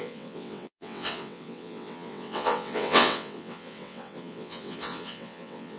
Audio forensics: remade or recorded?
remade